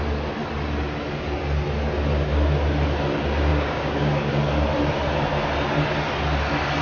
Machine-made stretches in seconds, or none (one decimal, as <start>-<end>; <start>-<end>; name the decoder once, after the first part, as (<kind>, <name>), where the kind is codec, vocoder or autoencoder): 3.5-4.3 (codec, DAC)